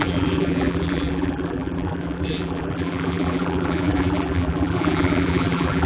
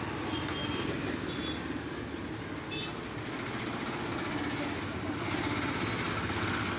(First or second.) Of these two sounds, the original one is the second